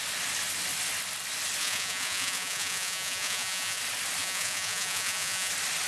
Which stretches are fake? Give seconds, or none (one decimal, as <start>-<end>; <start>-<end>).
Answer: 1.6-3.8; 4.2-5.5